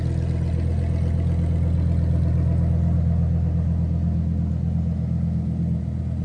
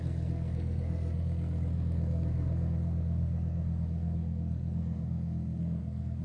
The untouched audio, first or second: first